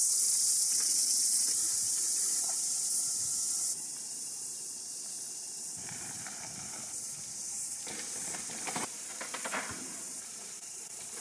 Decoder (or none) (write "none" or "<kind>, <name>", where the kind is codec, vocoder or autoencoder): vocoder, BigVGAN v2